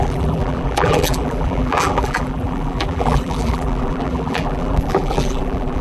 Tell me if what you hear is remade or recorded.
remade